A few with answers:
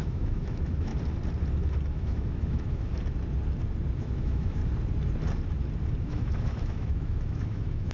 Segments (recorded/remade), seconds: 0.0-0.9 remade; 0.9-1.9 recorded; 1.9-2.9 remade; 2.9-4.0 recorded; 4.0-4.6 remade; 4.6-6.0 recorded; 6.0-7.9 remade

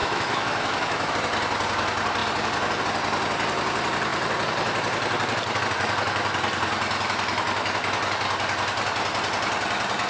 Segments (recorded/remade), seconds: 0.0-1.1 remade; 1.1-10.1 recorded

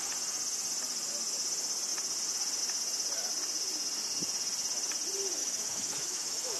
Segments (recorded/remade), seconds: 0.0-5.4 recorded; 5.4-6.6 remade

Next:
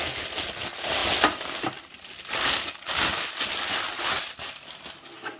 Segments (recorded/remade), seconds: 0.0-5.4 recorded